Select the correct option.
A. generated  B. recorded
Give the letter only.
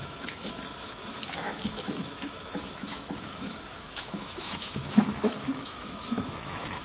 A